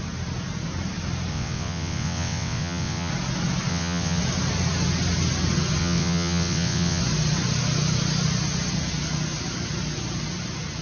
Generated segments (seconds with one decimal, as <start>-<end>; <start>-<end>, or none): 1.3-3.1; 3.7-4.2; 5.8-7.0

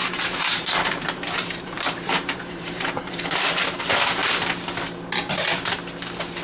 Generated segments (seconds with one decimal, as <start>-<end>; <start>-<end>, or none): 0.0-3.8

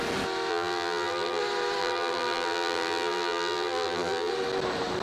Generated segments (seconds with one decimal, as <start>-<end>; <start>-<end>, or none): 0.5-1.4; 1.8-4.3